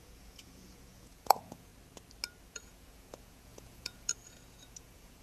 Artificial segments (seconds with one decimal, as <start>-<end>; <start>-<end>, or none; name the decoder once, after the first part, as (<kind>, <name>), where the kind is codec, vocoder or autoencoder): 0.0-1.7 (vocoder, Vocos); 2.5-5.2